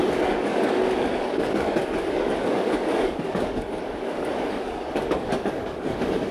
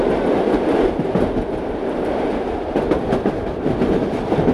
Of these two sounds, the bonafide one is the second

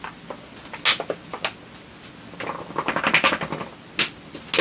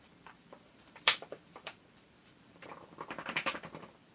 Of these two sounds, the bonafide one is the first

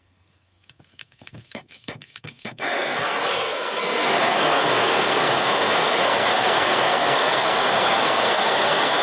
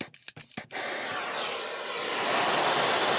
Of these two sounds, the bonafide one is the second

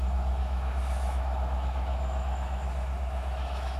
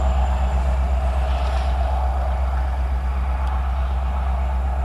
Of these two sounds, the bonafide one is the second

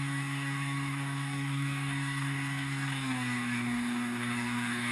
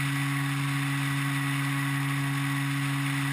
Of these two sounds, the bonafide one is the second